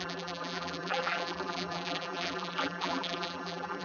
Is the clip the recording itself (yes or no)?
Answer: no